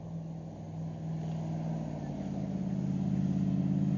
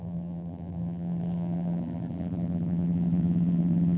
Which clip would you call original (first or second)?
first